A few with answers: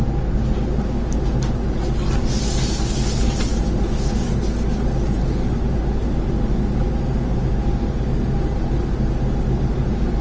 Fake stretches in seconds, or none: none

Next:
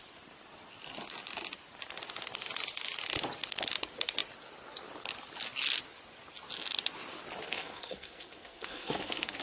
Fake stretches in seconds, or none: 7.4-9.4 (codec, SNAC)

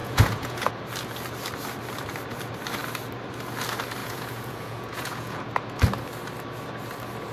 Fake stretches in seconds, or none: 0.0-0.7 (vocoder, Vocos); 4.0-5.5

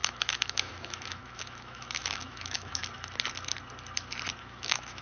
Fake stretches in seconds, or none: 0.0-2.8 (autoencoder, DAC-VAE); 4.4-5.0